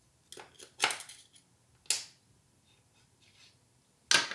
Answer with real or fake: real